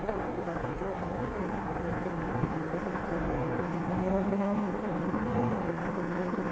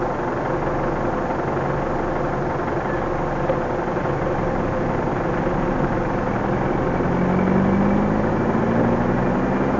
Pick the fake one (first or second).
first